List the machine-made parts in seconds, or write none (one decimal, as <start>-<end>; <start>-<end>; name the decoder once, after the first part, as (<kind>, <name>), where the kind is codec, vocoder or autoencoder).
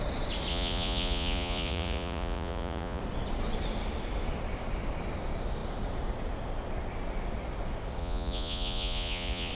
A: 0.5-3.0 (vocoder, Vocos); 8.0-9.5